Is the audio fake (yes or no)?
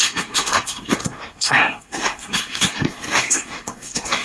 yes